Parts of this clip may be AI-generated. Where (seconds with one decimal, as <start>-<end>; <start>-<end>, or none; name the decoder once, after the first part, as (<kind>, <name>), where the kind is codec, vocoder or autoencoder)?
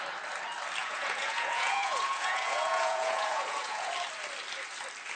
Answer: 0.8-3.9 (vocoder, Vocos)